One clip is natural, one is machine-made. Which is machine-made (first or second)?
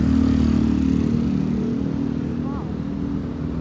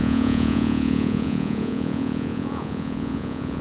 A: second